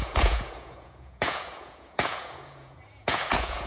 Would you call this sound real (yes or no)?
no